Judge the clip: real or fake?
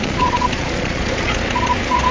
fake